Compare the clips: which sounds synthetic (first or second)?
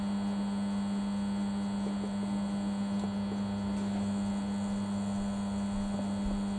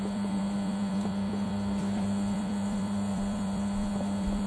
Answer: second